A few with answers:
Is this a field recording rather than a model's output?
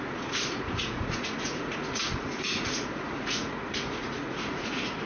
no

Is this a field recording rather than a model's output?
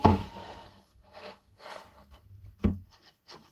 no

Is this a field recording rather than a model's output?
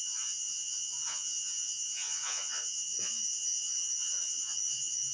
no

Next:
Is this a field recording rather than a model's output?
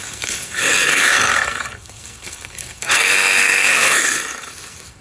no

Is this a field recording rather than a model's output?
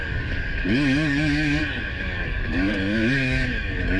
no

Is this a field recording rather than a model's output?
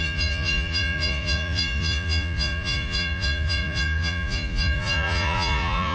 no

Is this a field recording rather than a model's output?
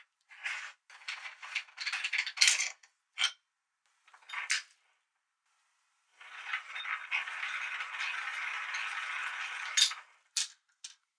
yes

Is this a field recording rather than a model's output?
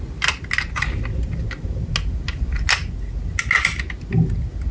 yes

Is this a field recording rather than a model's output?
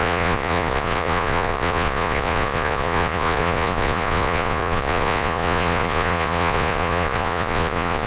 no